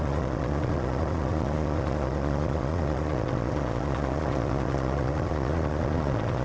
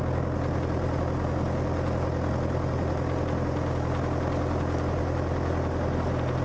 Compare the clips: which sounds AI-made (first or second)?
first